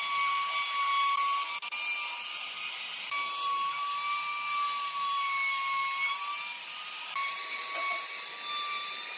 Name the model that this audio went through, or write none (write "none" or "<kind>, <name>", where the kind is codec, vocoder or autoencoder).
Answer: none